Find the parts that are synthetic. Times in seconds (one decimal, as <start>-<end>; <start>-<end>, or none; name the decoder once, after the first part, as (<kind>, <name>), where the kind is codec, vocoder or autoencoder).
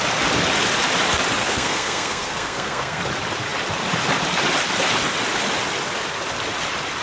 1.4-3.0 (codec, SNAC)